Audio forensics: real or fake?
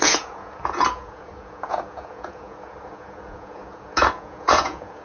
fake